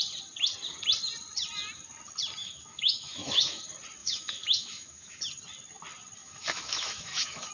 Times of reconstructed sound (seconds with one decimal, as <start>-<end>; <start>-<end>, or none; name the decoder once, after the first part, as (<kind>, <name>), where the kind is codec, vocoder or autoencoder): 2.4-3.6 (autoencoder, DAC-VAE); 4.0-5.2; 6.2-7.5